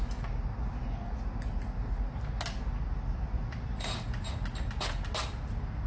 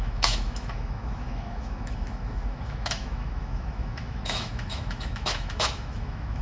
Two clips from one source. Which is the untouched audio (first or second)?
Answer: first